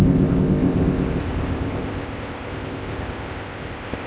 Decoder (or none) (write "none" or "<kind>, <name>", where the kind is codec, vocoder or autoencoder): codec, ZipCodec